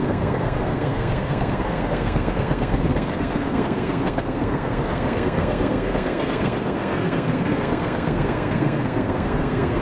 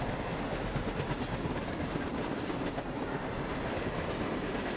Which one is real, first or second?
second